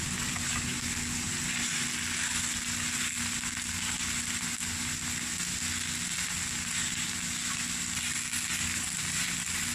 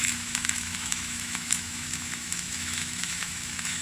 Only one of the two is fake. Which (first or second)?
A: second